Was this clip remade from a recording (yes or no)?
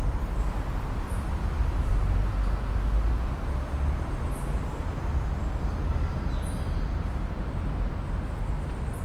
no